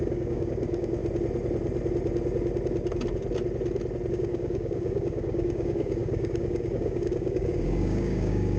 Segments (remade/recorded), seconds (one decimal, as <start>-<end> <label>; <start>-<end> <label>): 0.0-1.0 remade; 1.0-4.1 recorded; 4.1-8.6 remade